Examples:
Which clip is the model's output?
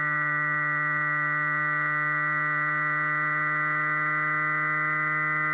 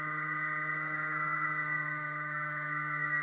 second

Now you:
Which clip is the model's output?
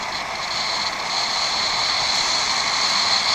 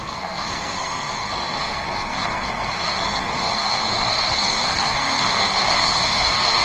second